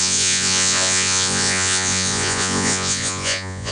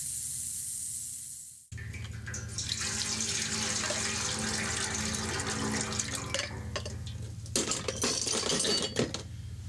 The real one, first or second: second